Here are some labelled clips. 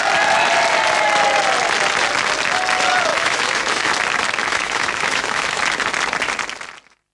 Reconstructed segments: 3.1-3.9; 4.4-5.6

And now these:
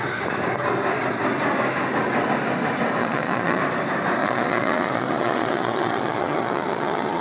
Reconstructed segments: 3.0-3.6; 4.2-7.2

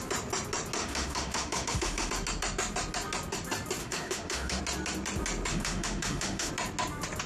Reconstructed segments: 0.8-2.1; 3.8-4.6; 5.5-6.5

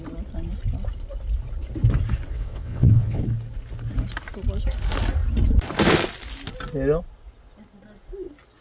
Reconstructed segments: 2.3-3.2